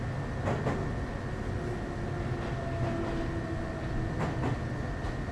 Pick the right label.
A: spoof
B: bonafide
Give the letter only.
B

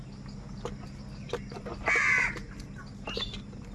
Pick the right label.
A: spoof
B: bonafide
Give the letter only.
B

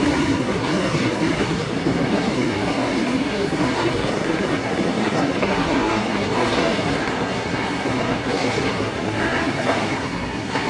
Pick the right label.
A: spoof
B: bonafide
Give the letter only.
A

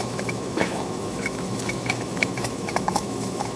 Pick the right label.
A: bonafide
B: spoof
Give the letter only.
B